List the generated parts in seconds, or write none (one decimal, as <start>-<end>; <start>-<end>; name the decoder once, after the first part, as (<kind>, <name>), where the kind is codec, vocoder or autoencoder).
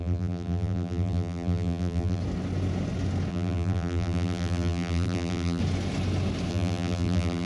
0.0-2.2 (vocoder, BigVGAN v2); 3.3-5.6; 6.5-7.5